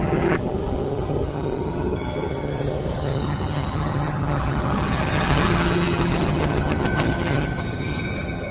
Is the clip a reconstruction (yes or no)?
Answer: yes